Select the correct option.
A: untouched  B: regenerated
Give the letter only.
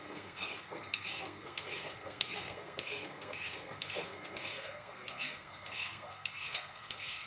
B